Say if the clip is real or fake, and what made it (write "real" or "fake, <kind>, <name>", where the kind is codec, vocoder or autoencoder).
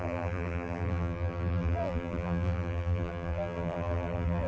fake, vocoder, BigVGAN v2